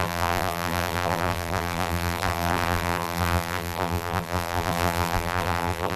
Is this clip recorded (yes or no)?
no